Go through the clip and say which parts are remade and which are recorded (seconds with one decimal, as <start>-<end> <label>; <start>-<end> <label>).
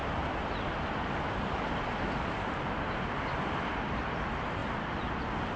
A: 0.0-3.1 remade; 3.1-4.6 recorded; 4.6-5.6 remade